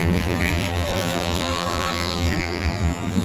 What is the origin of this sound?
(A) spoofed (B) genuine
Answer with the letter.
A